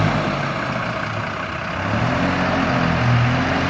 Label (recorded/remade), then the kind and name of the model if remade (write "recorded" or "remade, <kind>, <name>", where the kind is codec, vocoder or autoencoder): recorded